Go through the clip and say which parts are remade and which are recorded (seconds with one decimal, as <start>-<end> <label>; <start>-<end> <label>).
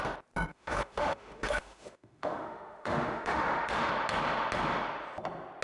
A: 0.0-0.5 recorded; 0.5-3.9 remade; 3.9-5.6 recorded